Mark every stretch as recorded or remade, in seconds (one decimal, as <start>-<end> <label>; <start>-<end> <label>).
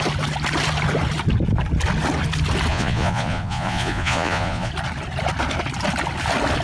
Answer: 0.0-2.7 recorded; 2.7-4.7 remade; 4.7-6.6 recorded